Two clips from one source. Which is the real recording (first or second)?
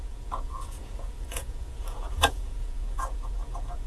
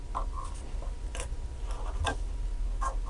second